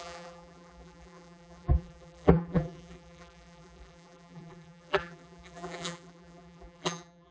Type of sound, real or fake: fake